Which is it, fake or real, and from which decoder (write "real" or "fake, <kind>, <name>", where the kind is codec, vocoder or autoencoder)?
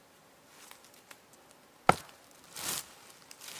real